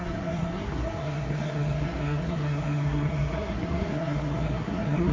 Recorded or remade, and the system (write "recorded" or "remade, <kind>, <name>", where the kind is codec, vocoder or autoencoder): remade, codec, SNAC